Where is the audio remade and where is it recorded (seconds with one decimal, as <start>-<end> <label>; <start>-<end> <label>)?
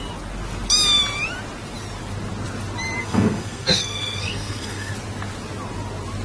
0.0-3.0 recorded; 3.0-4.9 remade; 4.9-6.2 recorded